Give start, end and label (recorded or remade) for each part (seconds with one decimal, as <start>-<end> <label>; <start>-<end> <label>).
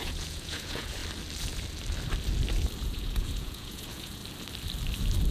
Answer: 0.0-1.0 remade; 1.0-2.8 recorded; 2.8-4.2 remade; 4.2-5.3 recorded